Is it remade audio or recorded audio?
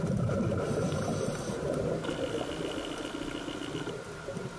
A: recorded